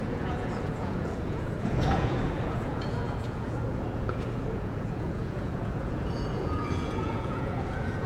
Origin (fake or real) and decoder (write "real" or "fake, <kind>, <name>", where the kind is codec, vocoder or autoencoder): fake, vocoder, Vocos